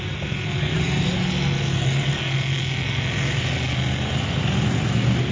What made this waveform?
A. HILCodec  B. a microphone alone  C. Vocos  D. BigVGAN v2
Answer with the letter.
B